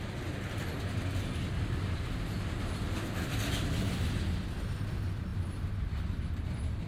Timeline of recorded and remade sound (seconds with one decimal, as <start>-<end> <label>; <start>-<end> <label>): 0.0-6.9 recorded